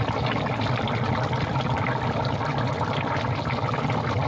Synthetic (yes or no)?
no